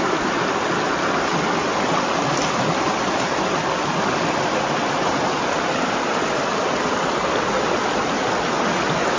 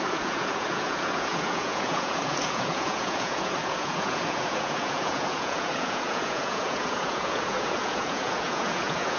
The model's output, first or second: second